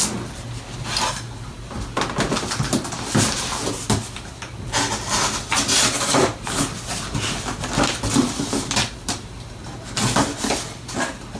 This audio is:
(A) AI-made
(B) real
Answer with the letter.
B